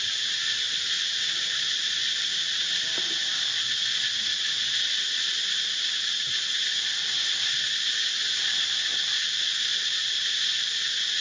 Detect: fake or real real